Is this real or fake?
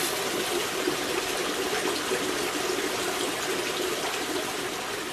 real